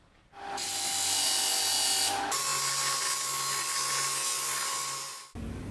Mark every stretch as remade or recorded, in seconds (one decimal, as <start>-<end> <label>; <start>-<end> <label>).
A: 0.0-5.7 recorded